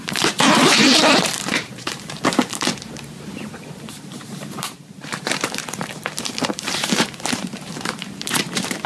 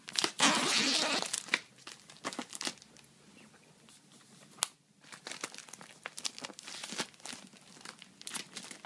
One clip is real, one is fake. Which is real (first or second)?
second